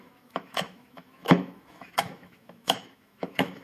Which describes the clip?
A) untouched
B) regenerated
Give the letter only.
B